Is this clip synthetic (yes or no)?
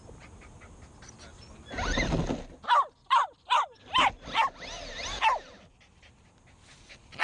no